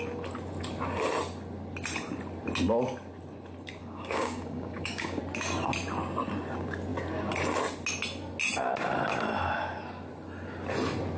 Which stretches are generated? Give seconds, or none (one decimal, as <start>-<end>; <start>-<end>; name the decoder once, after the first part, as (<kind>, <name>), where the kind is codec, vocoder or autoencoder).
3.8-5.2 (codec, DAC)